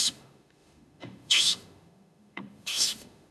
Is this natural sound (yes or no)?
no